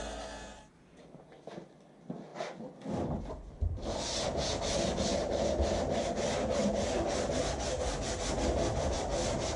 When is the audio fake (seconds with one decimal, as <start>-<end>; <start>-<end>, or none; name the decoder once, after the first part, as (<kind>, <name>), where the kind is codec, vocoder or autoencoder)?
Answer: none